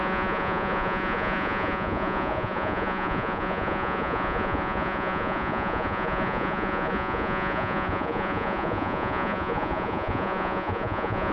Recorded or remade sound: remade